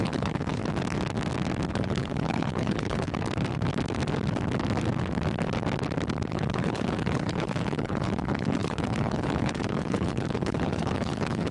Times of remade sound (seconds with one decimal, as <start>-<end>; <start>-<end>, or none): 0.0-0.6; 1.7-3.1; 6.3-11.5